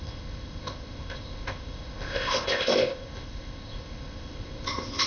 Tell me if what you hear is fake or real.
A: fake